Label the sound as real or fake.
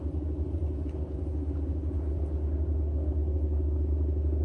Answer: real